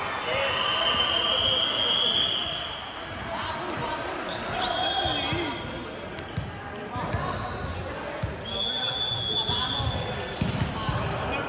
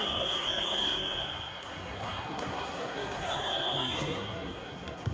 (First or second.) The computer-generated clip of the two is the second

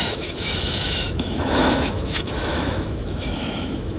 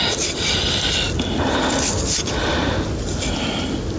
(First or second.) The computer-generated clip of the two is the first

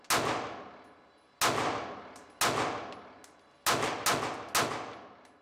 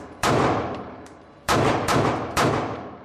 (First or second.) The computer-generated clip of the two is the second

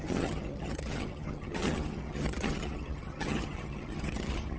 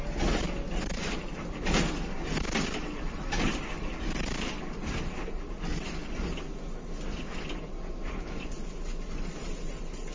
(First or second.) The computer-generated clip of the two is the first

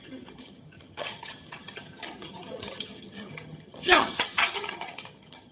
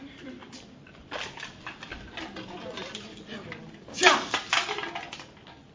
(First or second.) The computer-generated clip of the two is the first